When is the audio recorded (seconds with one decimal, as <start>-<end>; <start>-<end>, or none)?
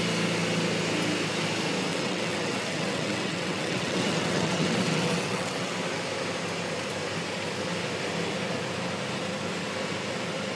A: 0.0-1.9; 5.7-10.6